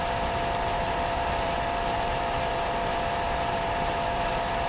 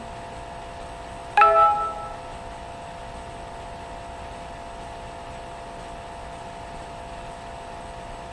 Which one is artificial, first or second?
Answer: first